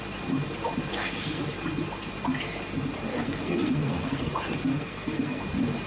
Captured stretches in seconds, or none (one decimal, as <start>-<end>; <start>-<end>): 0.0-0.9; 1.4-3.1; 4.3-4.7; 5.4-5.9